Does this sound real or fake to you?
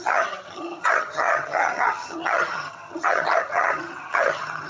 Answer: fake